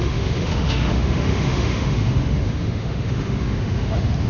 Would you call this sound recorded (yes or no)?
no